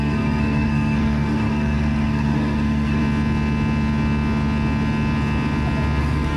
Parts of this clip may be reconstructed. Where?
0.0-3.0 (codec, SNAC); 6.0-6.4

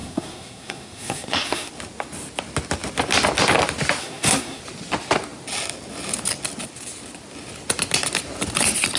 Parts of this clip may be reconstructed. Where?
0.0-1.7 (codec, SNAC); 4.0-4.6

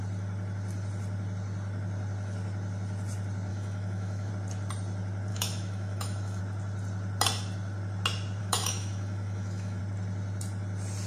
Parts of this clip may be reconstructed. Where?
3.5-4.3 (autoencoder, DAC-VAE); 5.3-6.4; 8.4-9.8